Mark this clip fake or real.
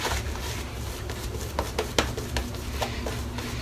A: real